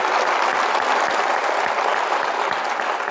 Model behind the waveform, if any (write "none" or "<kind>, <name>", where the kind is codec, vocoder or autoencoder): none